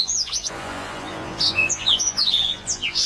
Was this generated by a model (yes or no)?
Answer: yes